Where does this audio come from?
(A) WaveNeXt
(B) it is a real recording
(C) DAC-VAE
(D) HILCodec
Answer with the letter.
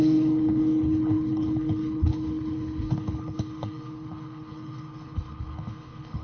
D